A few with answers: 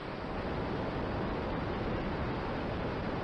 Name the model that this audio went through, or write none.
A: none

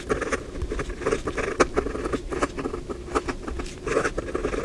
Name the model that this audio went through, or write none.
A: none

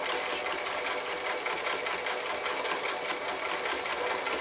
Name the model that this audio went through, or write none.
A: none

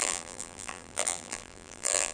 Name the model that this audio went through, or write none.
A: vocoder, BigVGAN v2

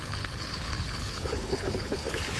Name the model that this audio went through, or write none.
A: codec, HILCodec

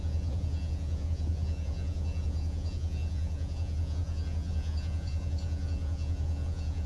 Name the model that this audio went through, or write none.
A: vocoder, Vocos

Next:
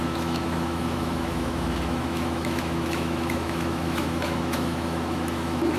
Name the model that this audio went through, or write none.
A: autoencoder, DAC-VAE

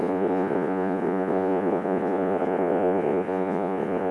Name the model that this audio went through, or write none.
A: vocoder, Vocos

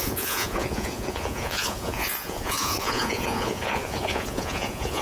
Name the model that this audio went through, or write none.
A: vocoder, Vocos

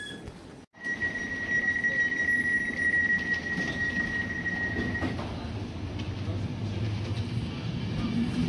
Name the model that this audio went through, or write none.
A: none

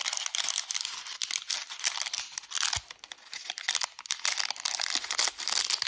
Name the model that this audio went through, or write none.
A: none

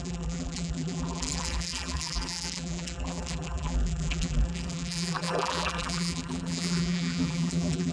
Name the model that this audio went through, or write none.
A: vocoder, BigVGAN v2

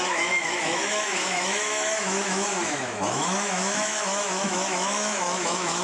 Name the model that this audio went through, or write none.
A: autoencoder, DAC-VAE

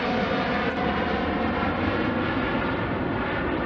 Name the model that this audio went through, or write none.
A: none